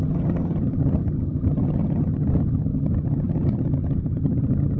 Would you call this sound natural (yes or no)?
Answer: no